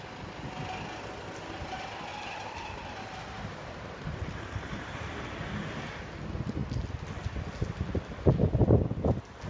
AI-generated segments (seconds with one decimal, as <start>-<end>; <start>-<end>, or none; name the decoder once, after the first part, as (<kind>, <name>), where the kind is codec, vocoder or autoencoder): 2.1-5.8 (vocoder, BigVGAN v2)

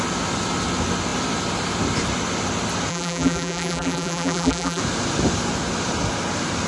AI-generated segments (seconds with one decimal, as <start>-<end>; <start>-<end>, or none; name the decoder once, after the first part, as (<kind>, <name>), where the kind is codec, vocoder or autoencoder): 2.9-4.8 (vocoder, BigVGAN v2)

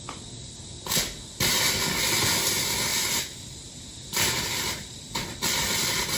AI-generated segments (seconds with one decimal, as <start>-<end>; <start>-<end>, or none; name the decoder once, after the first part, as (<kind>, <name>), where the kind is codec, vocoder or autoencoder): 2.9-5.8 (vocoder, BigVGAN v2)

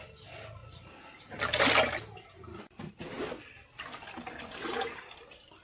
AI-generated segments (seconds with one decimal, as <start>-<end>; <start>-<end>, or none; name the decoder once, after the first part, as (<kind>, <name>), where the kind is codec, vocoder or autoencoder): none

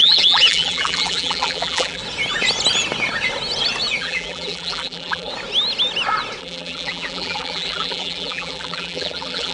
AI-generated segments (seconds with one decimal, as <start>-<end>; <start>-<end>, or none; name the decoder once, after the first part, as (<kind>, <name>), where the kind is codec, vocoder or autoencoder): 0.0-2.0 (vocoder, BigVGAN v2); 4.0-5.3; 6.4-9.5

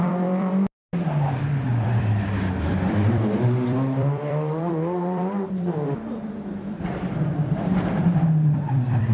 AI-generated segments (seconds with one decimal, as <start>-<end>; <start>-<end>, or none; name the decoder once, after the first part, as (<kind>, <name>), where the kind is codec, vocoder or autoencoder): 0.0-0.8 (vocoder, BigVGAN v2); 1.4-9.1